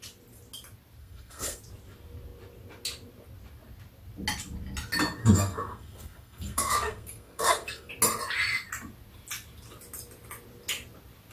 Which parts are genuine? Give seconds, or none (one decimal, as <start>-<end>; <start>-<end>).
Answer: 0.0-1.0; 1.6-5.2; 7.9-11.3